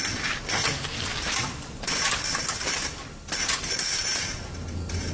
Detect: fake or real real